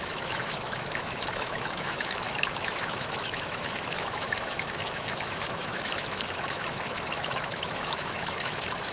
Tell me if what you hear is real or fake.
fake